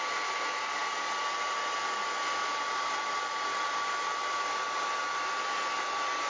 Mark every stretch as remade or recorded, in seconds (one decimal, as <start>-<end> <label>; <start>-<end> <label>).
0.0-6.3 recorded